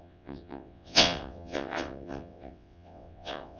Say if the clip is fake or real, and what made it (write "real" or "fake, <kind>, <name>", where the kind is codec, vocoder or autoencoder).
fake, vocoder, WaveNeXt